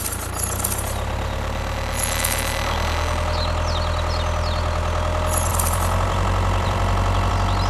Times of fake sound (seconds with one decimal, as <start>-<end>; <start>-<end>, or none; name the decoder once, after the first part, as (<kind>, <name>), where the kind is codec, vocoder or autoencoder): 5.5-7.3 (vocoder, BigVGAN v2)